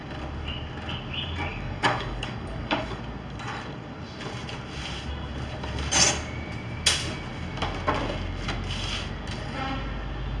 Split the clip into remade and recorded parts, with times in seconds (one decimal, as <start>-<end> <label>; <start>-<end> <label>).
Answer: 0.0-1.5 recorded; 1.5-3.0 remade; 3.0-10.4 recorded